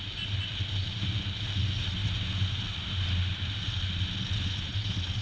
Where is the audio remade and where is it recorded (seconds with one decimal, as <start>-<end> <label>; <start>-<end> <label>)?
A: 0.0-5.2 recorded